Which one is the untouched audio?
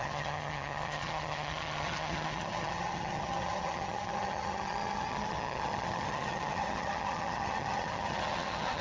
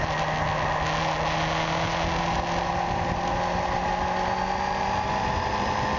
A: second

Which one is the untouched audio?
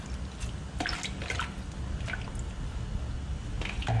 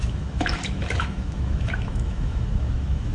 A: first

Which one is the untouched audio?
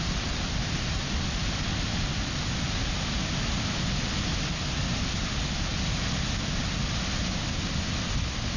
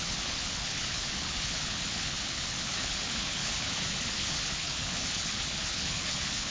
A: first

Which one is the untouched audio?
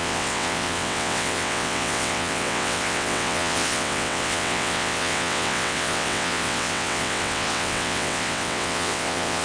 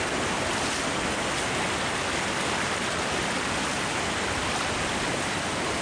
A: second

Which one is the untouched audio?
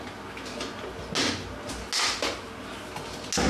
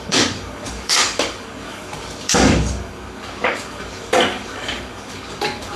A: first